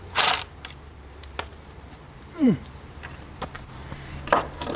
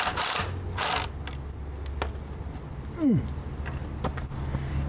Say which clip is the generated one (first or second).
first